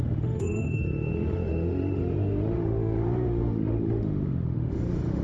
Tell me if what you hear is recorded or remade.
remade